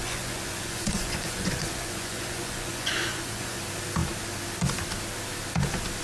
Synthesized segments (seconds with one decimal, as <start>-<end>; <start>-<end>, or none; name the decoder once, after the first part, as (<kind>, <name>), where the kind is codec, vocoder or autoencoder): 0.0-3.6 (vocoder, Vocos)